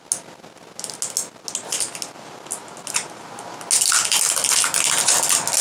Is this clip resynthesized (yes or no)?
no